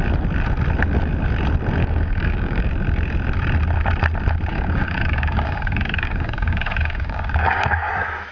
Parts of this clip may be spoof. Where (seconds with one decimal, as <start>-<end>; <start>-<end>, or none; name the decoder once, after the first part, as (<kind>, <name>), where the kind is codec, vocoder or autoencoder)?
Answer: 1.8-2.7 (codec, DAC); 4.5-7.9